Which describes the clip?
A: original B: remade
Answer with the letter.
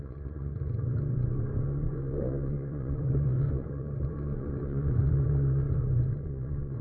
B